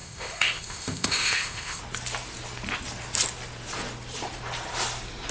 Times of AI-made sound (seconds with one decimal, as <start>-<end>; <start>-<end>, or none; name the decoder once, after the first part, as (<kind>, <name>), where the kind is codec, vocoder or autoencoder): 0.0-1.8 (codec, ZipCodec)